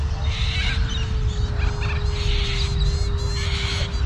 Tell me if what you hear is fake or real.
real